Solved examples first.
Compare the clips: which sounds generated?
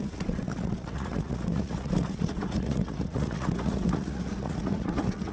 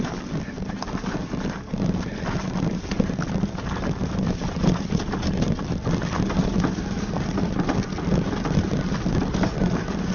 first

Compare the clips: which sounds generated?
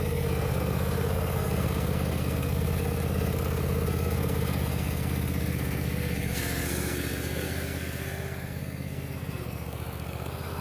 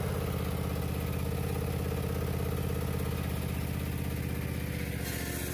first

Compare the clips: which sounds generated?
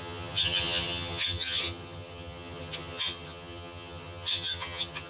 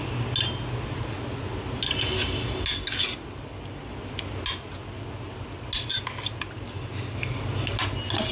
first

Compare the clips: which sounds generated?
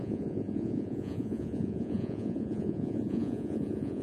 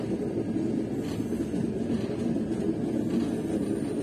first